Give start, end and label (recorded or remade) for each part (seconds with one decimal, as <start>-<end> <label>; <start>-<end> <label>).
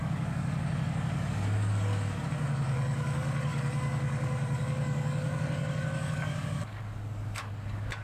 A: 0.0-8.0 remade